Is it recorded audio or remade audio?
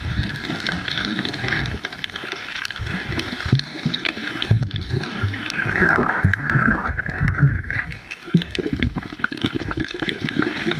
remade